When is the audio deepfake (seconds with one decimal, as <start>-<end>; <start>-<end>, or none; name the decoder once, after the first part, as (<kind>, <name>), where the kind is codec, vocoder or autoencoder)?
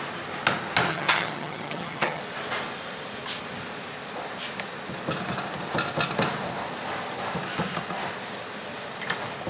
0.9-2.2 (vocoder, HiFi-GAN)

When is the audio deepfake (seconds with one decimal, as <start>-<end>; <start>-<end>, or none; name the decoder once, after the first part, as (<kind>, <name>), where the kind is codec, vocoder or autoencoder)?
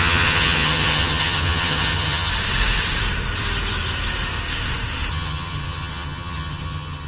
0.0-2.3 (vocoder, HiFi-GAN); 5.1-7.1